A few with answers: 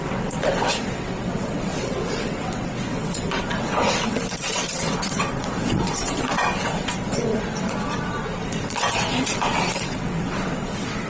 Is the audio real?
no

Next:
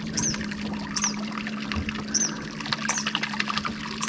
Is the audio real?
yes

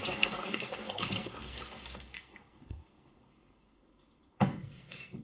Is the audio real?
no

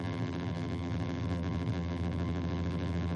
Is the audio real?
no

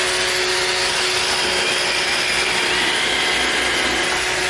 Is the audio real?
yes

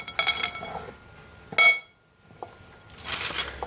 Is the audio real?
yes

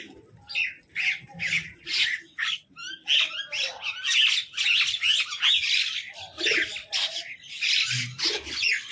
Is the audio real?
yes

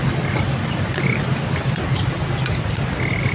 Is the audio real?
yes